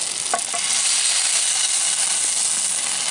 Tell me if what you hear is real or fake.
real